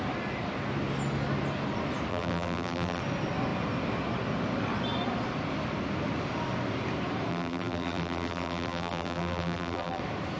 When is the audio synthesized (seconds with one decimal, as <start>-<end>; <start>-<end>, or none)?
2.1-3.0; 7.3-10.0